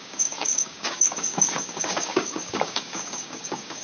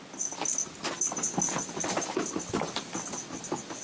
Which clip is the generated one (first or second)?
first